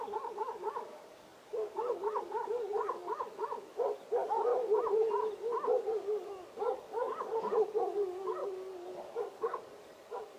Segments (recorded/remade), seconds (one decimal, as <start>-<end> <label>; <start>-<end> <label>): 0.0-4.5 remade; 4.5-5.7 recorded; 5.7-10.4 remade